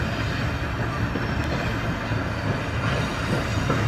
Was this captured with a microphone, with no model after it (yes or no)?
yes